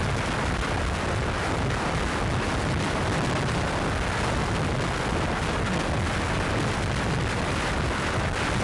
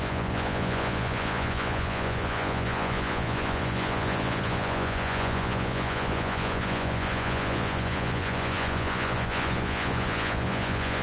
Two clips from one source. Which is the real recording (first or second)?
first